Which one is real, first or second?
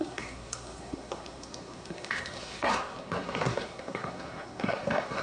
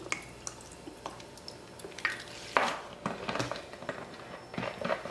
second